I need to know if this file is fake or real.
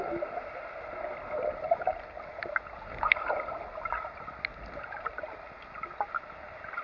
real